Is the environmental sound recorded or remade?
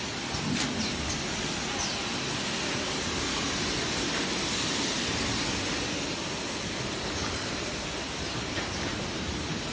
recorded